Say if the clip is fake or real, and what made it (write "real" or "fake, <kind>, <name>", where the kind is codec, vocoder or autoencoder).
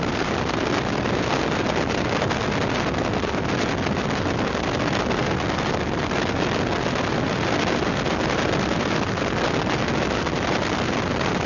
real